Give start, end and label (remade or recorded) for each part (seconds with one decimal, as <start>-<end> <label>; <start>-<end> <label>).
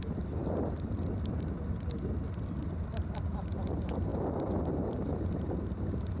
0.0-4.1 recorded; 4.1-5.1 remade; 5.1-6.2 recorded